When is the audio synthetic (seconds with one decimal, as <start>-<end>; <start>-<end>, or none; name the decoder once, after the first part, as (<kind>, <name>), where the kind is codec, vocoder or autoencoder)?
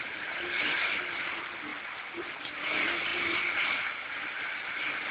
none